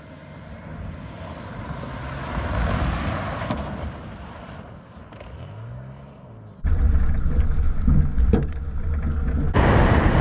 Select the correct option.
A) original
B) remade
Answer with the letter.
A